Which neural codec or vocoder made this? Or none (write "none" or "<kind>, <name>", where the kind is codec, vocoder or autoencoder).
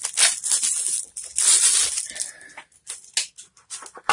none